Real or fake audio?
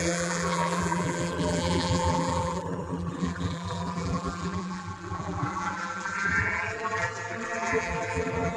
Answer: fake